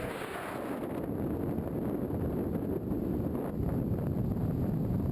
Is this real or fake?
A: real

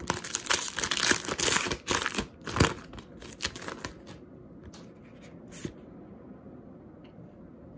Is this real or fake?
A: real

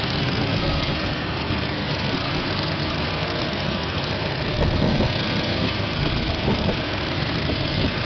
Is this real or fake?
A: fake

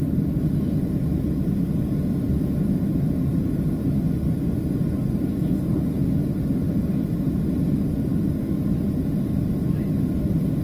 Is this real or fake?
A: real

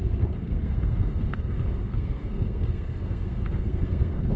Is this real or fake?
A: fake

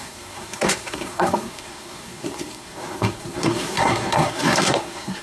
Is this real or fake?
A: fake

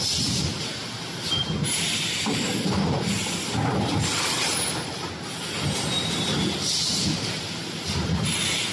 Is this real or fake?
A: real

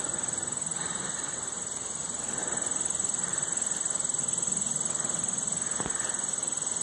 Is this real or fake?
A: real